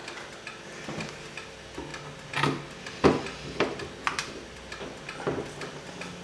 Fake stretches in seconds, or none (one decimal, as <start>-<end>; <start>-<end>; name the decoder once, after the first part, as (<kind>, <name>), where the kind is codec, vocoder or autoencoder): none